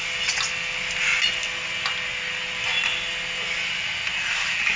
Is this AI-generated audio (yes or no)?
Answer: no